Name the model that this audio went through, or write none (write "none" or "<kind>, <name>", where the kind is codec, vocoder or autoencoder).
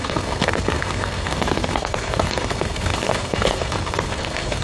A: codec, SNAC